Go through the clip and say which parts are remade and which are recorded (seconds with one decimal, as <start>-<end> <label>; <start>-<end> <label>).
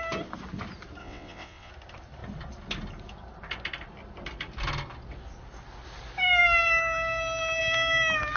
0.0-1.0 recorded; 1.0-1.7 remade; 1.7-8.4 recorded